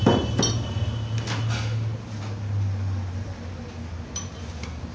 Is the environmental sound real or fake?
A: real